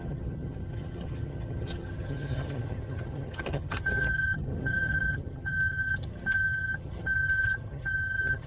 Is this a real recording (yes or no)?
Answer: no